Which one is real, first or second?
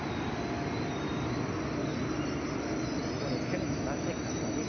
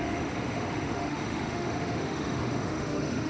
first